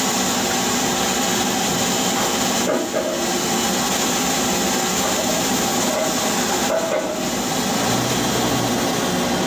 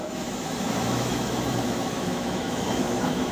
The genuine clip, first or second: first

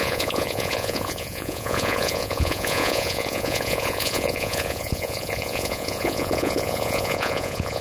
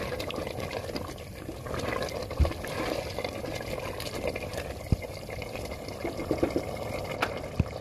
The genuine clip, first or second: second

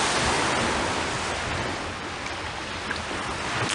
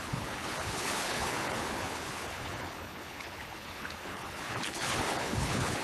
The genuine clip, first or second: first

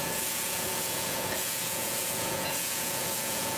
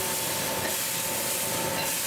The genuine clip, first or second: second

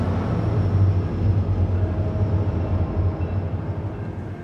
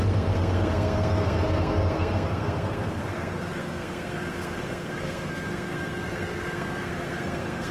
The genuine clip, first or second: first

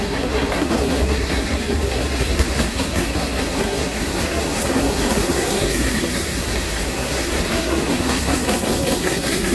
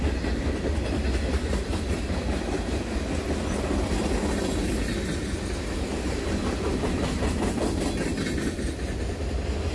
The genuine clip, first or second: second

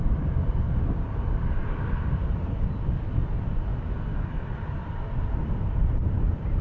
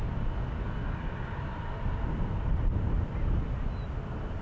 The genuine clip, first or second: second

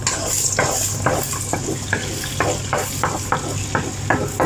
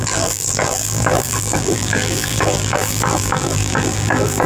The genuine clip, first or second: first